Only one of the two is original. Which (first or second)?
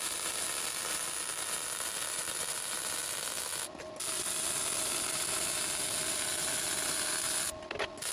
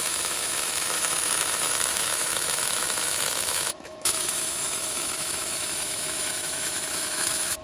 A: first